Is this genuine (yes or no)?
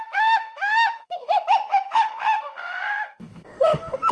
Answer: no